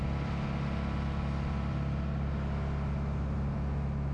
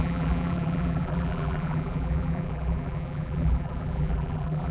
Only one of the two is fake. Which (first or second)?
second